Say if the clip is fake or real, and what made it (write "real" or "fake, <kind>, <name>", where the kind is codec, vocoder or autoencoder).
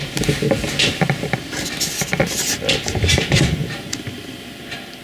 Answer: real